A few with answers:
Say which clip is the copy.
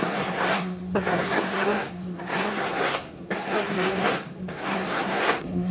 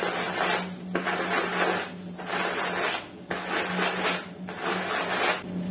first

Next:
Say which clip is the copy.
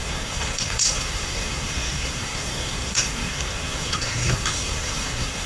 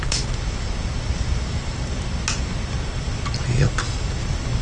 first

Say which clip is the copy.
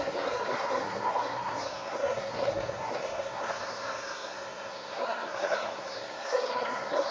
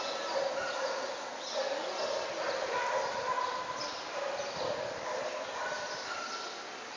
first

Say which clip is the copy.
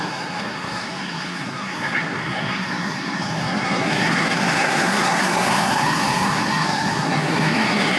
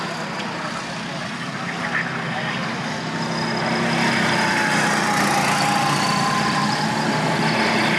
first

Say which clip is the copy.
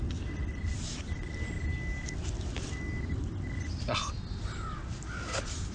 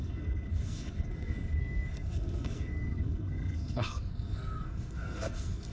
second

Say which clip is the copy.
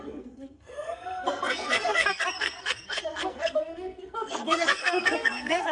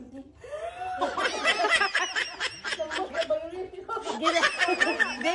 first